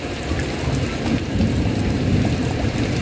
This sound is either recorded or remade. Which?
remade